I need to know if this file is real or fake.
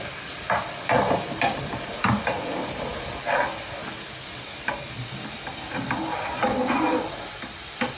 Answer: fake